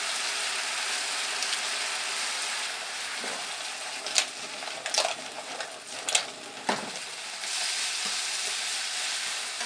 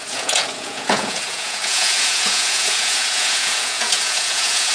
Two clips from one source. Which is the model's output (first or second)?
second